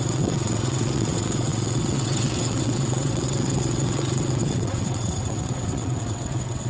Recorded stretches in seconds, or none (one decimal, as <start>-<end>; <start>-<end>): none